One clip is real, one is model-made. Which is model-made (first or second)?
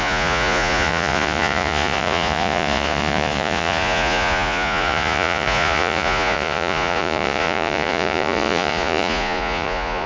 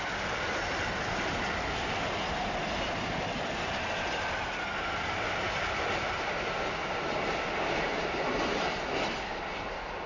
first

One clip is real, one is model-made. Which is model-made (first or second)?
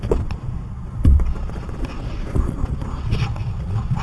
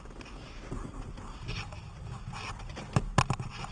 first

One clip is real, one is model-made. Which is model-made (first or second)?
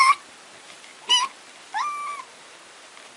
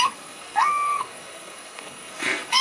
second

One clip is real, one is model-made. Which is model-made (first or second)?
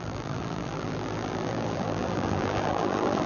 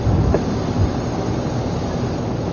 first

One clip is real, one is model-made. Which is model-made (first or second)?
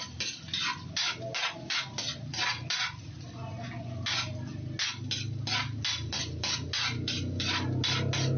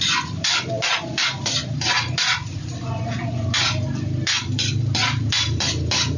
second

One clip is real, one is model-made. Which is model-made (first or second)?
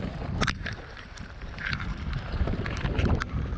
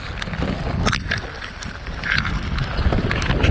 first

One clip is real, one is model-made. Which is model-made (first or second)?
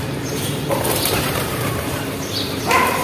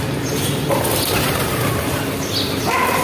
first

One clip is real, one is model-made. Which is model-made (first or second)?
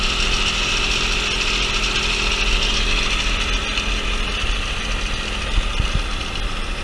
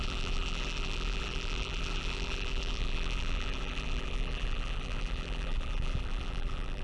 second